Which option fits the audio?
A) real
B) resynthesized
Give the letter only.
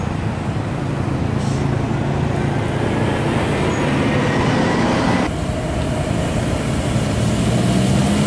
A